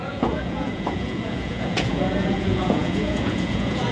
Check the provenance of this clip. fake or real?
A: fake